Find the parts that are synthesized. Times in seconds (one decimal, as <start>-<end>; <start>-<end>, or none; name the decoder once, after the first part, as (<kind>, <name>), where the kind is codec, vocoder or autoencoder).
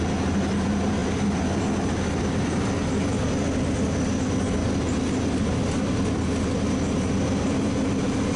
none